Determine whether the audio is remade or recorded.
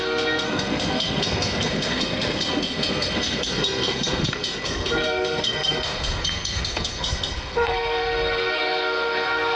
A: remade